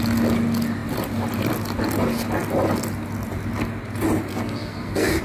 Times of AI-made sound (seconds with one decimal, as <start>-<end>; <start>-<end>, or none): 4.3-5.2